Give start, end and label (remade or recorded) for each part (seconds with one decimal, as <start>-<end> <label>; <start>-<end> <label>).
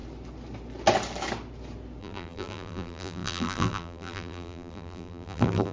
0.0-2.0 recorded; 2.0-5.7 remade